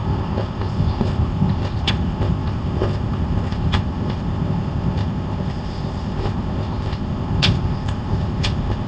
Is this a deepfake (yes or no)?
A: yes